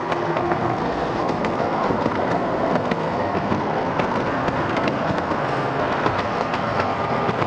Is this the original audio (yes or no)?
no